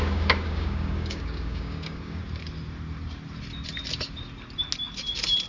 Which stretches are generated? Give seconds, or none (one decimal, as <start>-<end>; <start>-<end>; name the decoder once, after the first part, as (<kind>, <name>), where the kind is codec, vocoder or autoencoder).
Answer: 0.0-2.2 (codec, DAC)